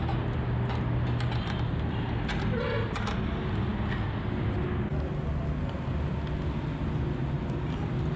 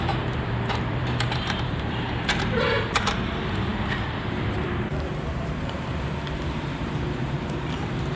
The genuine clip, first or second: first